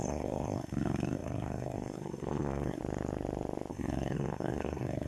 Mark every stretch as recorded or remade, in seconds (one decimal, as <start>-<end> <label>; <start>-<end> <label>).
0.0-2.8 remade; 2.8-3.7 recorded; 3.7-5.1 remade